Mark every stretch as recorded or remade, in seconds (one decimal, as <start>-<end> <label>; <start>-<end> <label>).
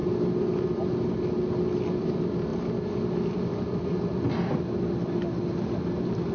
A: 0.0-6.3 recorded